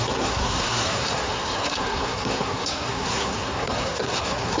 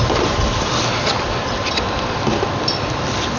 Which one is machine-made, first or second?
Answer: first